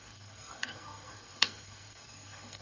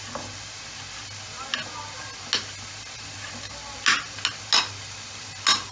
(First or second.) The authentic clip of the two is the second